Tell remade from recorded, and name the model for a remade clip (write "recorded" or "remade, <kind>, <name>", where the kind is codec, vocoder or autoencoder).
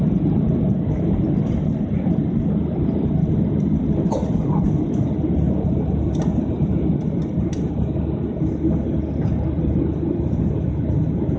recorded